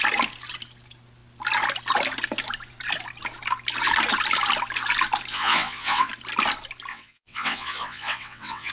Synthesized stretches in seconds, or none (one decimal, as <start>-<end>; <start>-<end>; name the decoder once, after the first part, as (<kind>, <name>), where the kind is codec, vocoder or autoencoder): 5.3-6.1 (vocoder, WaveNeXt); 6.9-8.7